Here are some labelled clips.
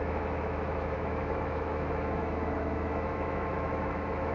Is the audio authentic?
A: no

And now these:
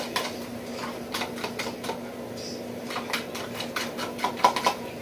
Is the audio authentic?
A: yes